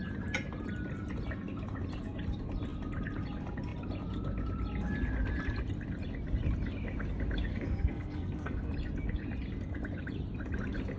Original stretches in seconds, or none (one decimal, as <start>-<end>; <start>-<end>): 0.0-7.5; 8.7-11.0